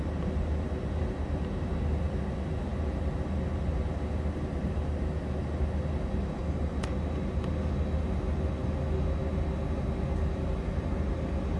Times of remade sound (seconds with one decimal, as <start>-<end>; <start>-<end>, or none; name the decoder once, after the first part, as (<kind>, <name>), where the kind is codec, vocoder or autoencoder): none